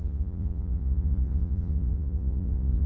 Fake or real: fake